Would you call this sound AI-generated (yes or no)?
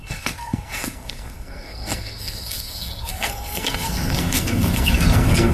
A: yes